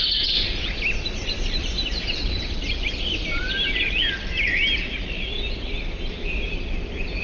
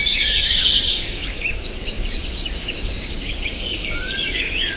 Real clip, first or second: first